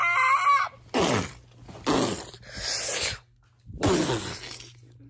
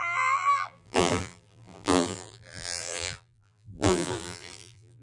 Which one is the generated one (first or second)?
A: second